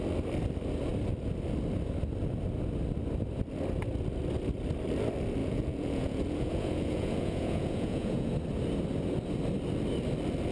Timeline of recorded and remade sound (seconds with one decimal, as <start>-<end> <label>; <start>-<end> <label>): 0.0-5.4 recorded; 5.4-8.3 remade; 8.3-10.5 recorded